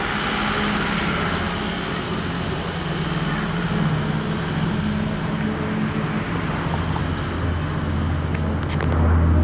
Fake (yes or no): no